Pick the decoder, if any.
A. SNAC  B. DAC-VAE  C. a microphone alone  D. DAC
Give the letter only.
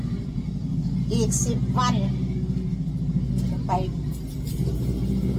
C